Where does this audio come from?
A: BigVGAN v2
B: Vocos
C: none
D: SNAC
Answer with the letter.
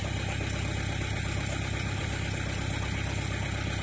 C